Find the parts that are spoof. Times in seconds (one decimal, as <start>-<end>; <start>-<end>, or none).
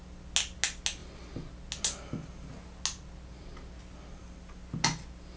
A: none